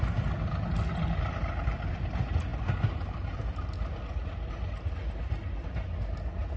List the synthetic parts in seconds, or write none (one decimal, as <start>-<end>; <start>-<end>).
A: none